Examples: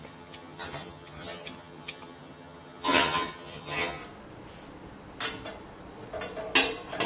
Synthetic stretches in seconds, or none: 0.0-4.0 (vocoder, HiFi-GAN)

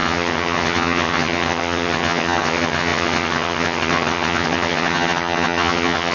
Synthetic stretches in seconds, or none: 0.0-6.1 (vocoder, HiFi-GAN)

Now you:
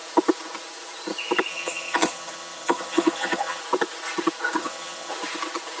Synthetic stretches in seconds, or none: 1.5-3.6 (vocoder, HiFi-GAN); 4.6-5.1